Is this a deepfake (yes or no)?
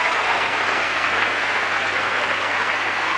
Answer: yes